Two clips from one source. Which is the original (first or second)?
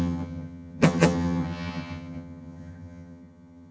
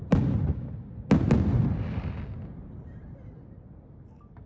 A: second